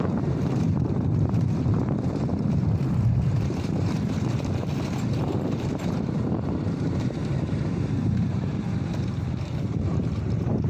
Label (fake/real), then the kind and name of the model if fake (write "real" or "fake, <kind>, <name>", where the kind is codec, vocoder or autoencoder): fake, vocoder, BigVGAN v2